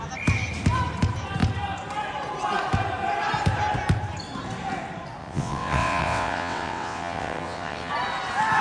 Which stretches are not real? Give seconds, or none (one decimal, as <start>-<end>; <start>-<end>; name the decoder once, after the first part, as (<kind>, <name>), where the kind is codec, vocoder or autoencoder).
5.2-7.9 (vocoder, WaveNeXt)